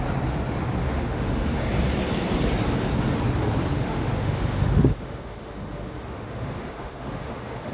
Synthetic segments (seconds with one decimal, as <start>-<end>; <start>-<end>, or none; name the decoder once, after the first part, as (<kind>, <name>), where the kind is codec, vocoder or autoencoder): 0.8-1.6 (autoencoder, DAC-VAE); 3.7-7.7